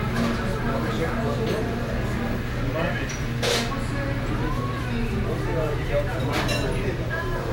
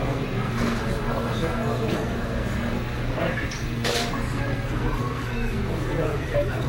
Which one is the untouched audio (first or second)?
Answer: first